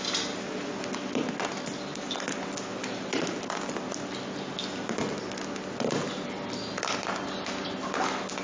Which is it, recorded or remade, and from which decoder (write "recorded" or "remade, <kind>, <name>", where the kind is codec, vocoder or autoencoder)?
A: recorded